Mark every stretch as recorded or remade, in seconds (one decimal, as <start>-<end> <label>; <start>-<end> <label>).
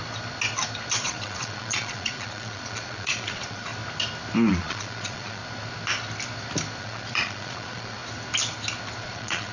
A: 0.0-1.0 recorded; 1.0-3.7 remade; 3.7-4.5 recorded; 4.5-5.4 remade; 5.4-6.8 recorded; 6.8-8.0 remade; 8.0-9.0 recorded; 9.0-9.5 remade